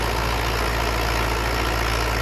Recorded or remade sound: recorded